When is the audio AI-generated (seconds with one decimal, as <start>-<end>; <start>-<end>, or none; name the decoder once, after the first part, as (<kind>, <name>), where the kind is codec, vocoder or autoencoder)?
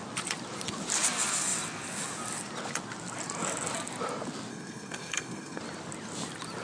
4.5-5.6 (codec, SNAC)